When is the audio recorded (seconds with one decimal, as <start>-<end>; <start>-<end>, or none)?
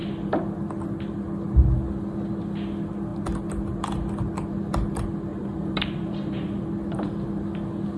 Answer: 0.0-5.3; 6.6-8.0